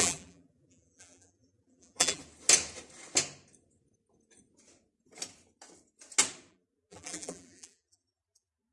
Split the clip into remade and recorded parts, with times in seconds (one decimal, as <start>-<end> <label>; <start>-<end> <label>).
0.0-2.2 remade; 2.2-6.5 recorded; 6.5-8.7 remade